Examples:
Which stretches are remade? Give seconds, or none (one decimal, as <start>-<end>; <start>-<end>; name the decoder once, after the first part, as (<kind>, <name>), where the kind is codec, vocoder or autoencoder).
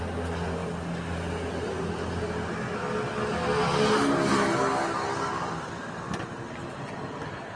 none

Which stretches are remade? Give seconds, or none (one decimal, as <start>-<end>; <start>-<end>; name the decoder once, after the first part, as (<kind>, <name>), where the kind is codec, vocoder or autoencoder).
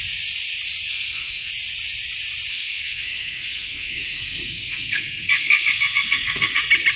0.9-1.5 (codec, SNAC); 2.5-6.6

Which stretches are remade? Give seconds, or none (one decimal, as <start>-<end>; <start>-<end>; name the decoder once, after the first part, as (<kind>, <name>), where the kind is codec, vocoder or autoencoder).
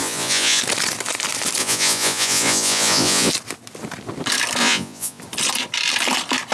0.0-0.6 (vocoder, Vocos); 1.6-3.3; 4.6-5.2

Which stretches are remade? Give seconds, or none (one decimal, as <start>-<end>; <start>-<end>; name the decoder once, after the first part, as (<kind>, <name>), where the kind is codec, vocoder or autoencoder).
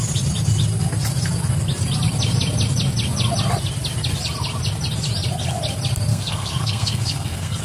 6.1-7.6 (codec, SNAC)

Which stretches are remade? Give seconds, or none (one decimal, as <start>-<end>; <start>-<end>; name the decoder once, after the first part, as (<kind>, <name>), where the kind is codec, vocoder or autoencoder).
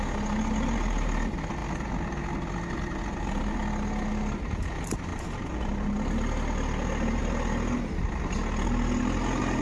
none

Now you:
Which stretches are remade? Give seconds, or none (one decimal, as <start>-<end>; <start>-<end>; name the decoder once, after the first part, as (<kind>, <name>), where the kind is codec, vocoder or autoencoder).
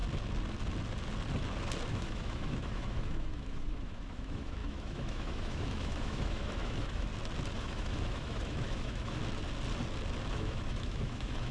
1.9-7.1 (autoencoder, DAC-VAE); 7.6-9.2; 10.3-11.5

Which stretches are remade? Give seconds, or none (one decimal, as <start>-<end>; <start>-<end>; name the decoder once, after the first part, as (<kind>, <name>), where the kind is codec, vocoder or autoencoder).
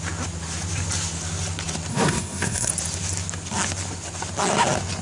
1.9-2.7 (codec, SNAC)